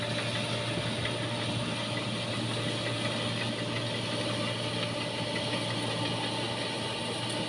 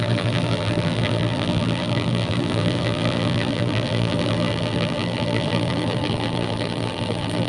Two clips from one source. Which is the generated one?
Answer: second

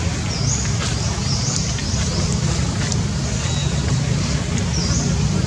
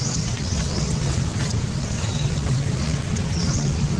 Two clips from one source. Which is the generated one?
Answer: second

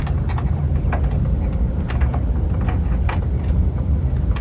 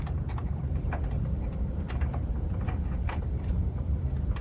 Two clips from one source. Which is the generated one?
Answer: second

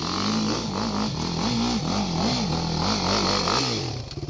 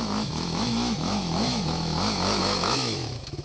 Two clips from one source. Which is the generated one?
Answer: second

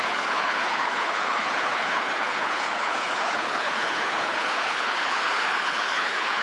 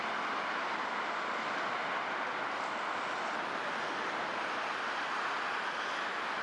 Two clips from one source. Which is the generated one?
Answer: first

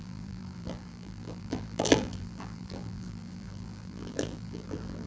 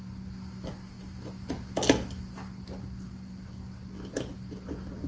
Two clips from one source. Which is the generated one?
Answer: first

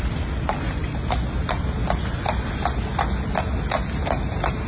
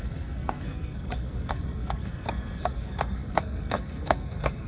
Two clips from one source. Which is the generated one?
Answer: second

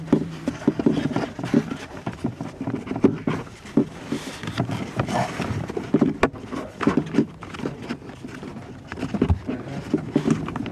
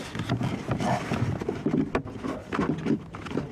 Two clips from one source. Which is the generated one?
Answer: first